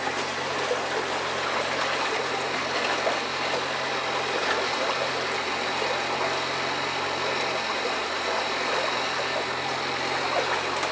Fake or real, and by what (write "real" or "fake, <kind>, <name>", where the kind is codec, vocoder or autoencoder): real